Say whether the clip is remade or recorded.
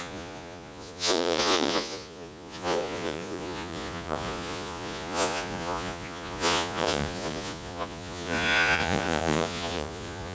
remade